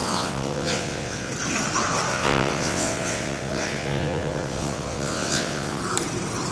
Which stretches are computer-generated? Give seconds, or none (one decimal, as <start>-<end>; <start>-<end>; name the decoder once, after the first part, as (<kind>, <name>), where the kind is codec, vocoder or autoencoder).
0.0-1.3 (vocoder, WaveNeXt); 2.1-5.8